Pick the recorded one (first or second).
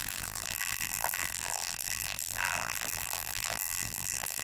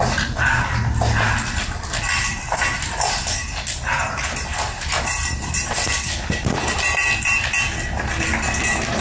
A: second